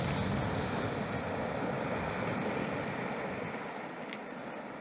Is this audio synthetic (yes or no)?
no